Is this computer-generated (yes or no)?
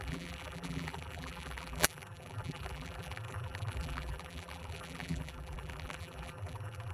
yes